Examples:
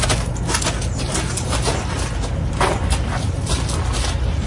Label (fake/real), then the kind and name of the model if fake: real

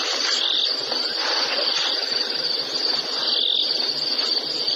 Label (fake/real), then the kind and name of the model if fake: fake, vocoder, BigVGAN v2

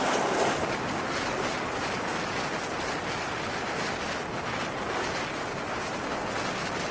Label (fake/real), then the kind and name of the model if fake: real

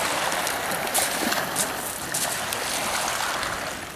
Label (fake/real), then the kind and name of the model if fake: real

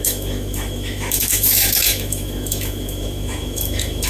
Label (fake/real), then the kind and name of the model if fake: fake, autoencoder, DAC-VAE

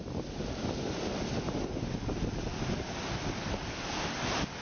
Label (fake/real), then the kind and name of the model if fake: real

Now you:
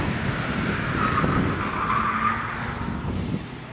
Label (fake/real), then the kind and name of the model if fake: real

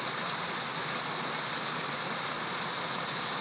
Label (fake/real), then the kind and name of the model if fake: real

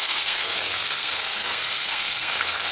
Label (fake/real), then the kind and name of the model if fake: fake, codec, SNAC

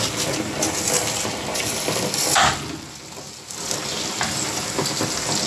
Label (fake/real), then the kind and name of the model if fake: real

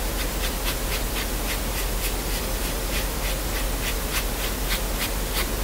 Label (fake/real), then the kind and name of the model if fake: real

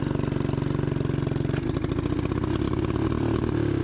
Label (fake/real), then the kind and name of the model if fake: real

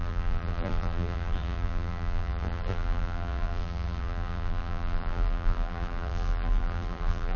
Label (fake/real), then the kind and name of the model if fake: fake, vocoder, BigVGAN v2